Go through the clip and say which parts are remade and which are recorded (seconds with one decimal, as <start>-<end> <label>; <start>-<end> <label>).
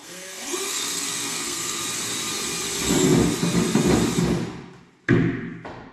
0.0-1.8 remade; 1.8-5.9 recorded